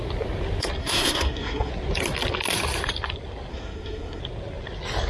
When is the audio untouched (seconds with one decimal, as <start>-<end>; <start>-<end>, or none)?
0.0-0.8; 1.7-3.5; 4.2-5.1